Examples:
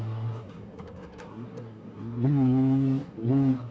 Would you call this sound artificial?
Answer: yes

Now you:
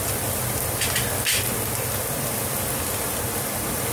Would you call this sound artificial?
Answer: no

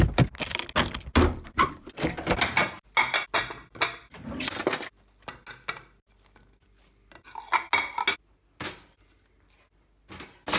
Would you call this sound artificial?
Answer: no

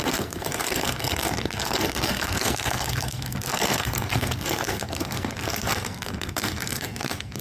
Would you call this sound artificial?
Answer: yes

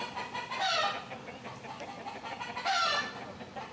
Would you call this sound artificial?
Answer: no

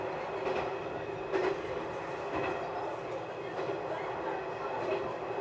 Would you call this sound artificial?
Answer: no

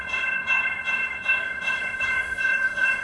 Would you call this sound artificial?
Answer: yes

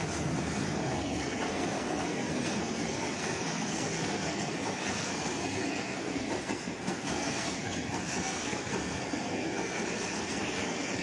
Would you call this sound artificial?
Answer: yes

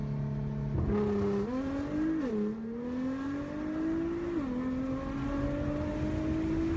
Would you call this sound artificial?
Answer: no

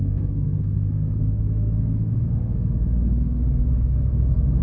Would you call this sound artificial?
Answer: yes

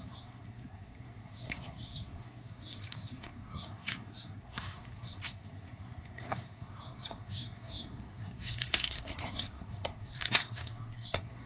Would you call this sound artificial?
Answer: yes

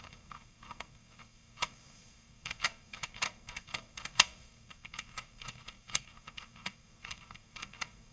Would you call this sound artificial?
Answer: yes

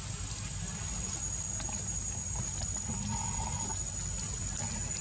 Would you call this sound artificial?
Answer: no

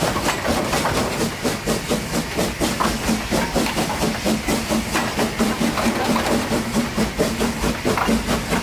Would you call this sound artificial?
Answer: no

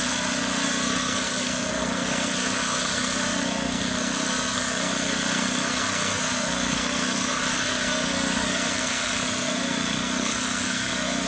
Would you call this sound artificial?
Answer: yes